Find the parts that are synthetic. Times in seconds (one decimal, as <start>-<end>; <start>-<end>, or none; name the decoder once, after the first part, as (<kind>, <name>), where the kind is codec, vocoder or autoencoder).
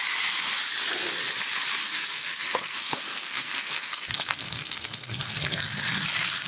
1.8-5.7 (codec, SNAC)